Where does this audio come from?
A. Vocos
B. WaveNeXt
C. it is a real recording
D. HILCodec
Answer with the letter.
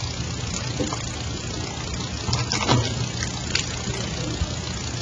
C